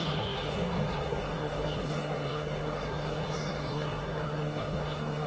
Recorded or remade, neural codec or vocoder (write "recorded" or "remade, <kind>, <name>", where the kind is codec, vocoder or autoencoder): remade, codec, SNAC